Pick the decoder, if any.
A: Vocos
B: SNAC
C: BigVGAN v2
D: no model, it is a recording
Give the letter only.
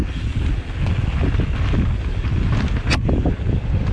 D